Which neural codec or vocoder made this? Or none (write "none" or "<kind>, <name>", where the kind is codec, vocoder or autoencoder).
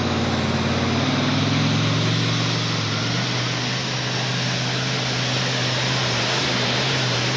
none